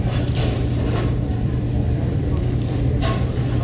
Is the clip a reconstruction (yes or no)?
yes